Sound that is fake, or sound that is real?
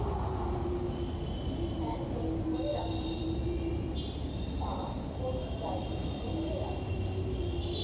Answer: real